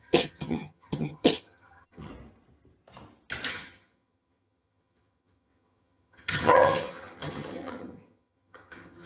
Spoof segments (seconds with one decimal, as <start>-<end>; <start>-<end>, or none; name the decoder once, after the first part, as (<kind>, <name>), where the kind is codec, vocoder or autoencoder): 0.0-2.1 (vocoder, HiFi-GAN); 3.5-9.1